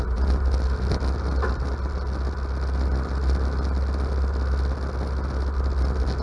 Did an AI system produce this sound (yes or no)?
no